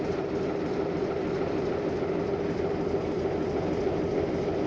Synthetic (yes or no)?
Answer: no